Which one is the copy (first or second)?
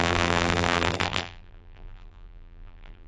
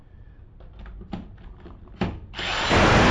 first